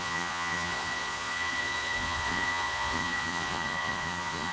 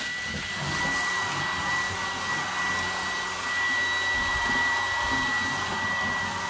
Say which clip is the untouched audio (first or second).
second